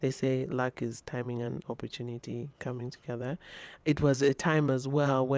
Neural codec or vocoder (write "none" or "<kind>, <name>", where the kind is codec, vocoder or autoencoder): vocoder, WaveNeXt